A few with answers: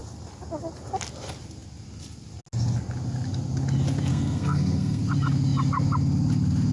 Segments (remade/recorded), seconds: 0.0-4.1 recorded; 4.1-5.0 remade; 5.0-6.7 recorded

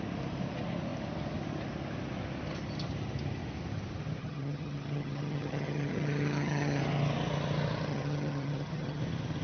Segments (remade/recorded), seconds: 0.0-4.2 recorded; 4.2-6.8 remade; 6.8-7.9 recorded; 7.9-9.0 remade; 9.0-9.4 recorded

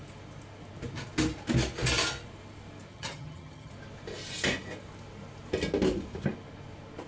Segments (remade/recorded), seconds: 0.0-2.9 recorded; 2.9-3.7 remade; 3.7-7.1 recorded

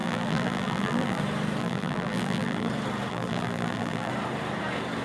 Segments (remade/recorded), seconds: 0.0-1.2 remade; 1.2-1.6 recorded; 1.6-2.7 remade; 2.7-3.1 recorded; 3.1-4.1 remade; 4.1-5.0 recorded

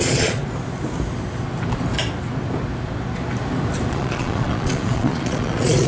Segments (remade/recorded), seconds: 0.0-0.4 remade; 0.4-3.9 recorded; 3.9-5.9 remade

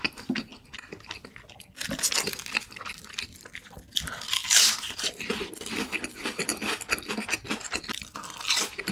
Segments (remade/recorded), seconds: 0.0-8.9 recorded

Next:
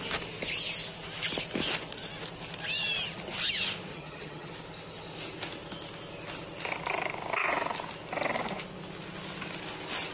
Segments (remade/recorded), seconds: 0.0-3.9 recorded; 3.9-4.5 remade; 4.5-10.1 recorded

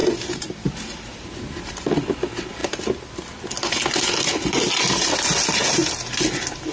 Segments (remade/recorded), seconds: 0.0-0.7 remade; 0.7-6.7 recorded